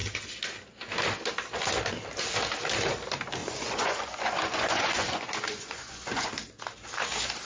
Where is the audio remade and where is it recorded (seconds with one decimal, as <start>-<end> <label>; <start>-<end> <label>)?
0.0-3.4 recorded; 3.4-6.3 remade; 6.3-7.5 recorded

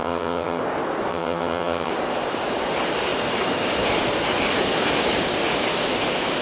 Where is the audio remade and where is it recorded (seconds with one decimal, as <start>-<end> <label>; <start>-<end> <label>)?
0.0-0.6 remade; 0.6-1.1 recorded; 1.1-1.9 remade; 1.9-6.4 recorded

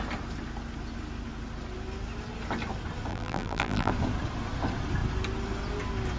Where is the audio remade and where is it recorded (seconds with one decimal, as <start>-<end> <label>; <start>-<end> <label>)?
0.0-3.1 recorded; 3.1-3.9 remade; 3.9-6.2 recorded

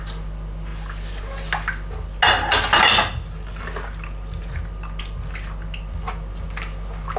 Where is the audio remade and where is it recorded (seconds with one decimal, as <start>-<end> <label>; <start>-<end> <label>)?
0.0-7.2 recorded

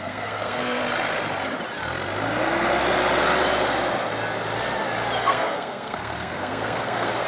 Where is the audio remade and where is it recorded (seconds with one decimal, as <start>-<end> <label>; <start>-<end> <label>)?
0.0-0.8 remade; 0.8-5.2 recorded; 5.2-7.3 remade

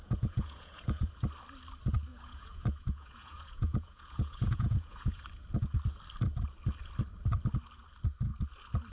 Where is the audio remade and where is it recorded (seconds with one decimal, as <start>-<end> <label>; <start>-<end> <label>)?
0.0-1.1 remade; 1.1-2.1 recorded; 2.1-5.2 remade; 5.2-8.9 recorded

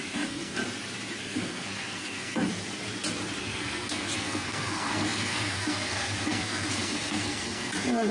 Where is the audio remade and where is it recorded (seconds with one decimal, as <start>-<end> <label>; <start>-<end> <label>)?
0.0-0.6 remade; 0.6-1.2 recorded; 1.2-2.5 remade; 2.5-3.4 recorded; 3.4-8.1 remade

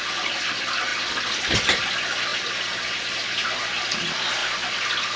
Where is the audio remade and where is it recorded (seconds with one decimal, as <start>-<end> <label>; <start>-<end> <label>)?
0.0-5.2 recorded